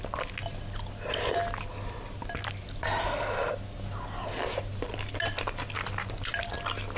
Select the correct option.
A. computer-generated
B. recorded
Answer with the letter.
B